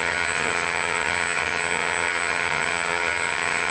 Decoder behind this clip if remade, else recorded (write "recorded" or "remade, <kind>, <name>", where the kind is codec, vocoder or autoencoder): remade, vocoder, HiFi-GAN